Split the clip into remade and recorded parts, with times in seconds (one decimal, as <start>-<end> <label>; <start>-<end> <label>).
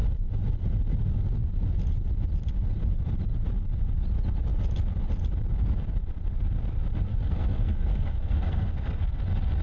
0.0-7.1 recorded; 7.1-9.2 remade; 9.2-9.6 recorded